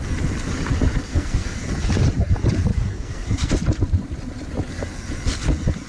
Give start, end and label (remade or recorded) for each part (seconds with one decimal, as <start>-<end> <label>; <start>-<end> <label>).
0.0-1.1 recorded; 1.1-1.6 remade; 1.6-2.7 recorded; 2.7-3.5 remade; 3.5-5.9 recorded